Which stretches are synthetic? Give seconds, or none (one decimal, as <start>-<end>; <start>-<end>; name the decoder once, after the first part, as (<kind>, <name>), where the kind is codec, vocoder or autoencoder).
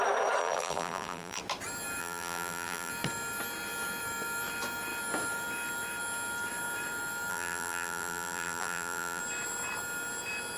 0.4-1.4 (vocoder, BigVGAN v2); 2.0-2.9; 7.3-9.2